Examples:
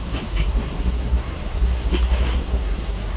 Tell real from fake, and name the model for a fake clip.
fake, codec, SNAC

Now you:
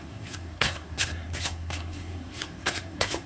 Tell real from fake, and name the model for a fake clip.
fake, codec, SNAC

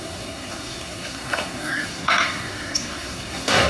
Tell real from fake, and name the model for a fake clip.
fake, codec, SNAC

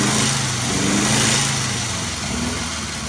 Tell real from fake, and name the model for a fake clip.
real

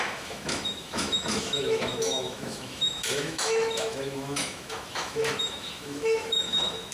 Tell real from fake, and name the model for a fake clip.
fake, autoencoder, DAC-VAE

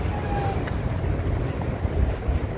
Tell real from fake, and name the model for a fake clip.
real